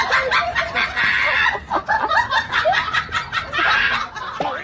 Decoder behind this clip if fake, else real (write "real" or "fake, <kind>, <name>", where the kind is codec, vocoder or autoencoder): real